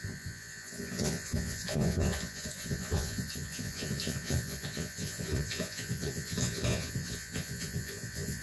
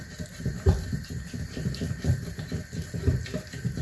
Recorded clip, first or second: second